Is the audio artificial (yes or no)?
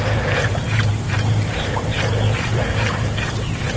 yes